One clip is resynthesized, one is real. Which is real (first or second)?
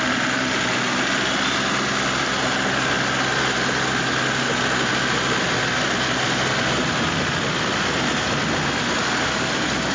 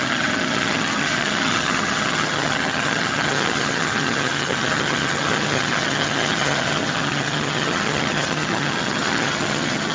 first